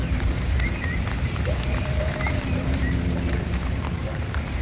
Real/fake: fake